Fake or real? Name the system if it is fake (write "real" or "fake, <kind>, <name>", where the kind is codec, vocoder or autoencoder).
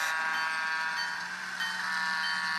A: real